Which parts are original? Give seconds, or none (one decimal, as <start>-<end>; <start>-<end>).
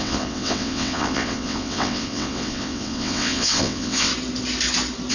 4.1-5.1